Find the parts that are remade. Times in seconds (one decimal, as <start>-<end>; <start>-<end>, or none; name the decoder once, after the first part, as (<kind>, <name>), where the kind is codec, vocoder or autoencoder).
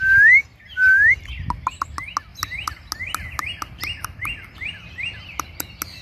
none